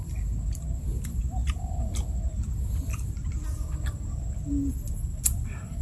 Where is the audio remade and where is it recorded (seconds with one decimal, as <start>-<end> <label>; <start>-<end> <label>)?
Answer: 0.0-5.8 recorded